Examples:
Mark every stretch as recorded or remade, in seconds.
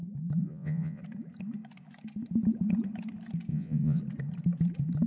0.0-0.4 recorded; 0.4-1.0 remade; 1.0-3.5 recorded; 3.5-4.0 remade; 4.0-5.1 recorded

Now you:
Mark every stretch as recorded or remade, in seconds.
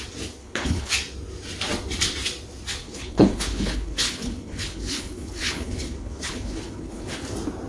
0.0-0.4 recorded; 0.4-0.9 remade; 0.9-2.8 recorded; 2.8-7.3 remade; 7.3-7.7 recorded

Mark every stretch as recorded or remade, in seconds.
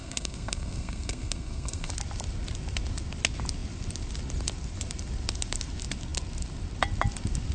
0.0-1.9 remade; 1.9-7.5 recorded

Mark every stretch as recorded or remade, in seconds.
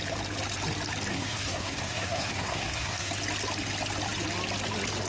0.0-1.1 recorded; 1.1-3.1 remade; 3.1-5.1 recorded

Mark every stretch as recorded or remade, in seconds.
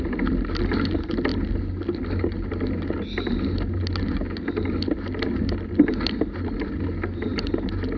0.0-8.0 recorded